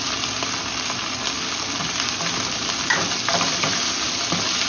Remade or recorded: recorded